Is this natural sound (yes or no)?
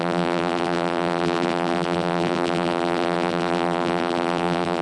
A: no